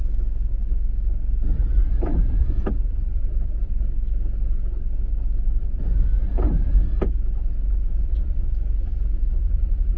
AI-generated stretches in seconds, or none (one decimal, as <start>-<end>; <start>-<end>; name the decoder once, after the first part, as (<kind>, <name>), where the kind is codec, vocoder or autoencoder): 2.4-3.3 (vocoder, BigVGAN v2)

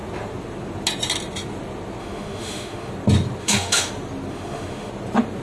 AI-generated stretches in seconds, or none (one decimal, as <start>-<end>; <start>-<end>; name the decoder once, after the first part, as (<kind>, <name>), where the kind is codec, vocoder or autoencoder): 2.0-2.9 (autoencoder, DAC-VAE); 3.4-3.9; 4.3-4.9